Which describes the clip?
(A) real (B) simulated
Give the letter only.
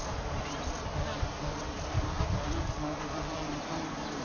A